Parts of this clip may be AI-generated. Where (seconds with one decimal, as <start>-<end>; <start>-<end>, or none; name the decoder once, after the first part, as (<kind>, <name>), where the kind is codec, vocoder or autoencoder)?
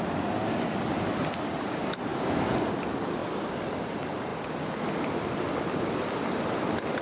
none